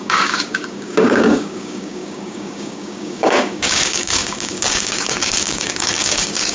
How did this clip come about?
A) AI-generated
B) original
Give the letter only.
A